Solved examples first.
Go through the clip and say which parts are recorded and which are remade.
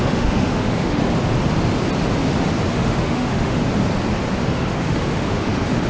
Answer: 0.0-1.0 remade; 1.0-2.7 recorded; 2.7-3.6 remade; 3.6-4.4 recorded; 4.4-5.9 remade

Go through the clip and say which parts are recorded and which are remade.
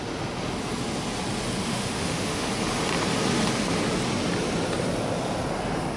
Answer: 0.0-1.7 recorded; 1.7-2.5 remade; 2.5-6.0 recorded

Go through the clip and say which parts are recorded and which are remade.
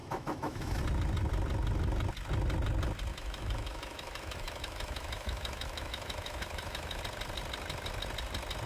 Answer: 0.0-0.8 remade; 0.8-3.1 recorded; 3.1-7.0 remade; 7.0-8.7 recorded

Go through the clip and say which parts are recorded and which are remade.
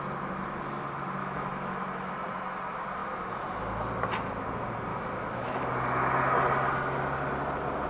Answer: 0.0-1.2 recorded; 1.2-2.1 remade; 2.1-4.9 recorded; 4.9-5.7 remade; 5.7-7.9 recorded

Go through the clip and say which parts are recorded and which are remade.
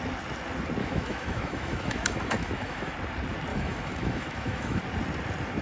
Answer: 0.0-0.8 recorded; 0.8-2.9 remade; 2.9-3.5 recorded; 3.5-4.8 remade; 4.8-5.6 recorded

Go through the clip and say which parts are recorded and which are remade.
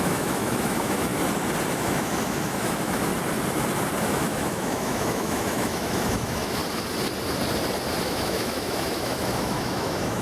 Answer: 0.0-1.1 remade; 1.1-1.7 recorded; 1.7-3.1 remade; 3.1-4.0 recorded; 4.0-6.6 remade; 6.6-8.0 recorded; 8.0-10.2 remade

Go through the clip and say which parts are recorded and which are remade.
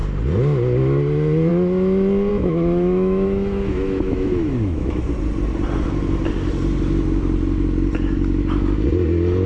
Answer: 0.0-2.3 recorded; 2.3-5.1 remade; 5.1-9.5 recorded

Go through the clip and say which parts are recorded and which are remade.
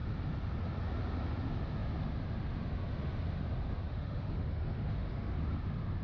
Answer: 0.0-3.9 recorded; 3.9-5.4 remade; 5.4-6.0 recorded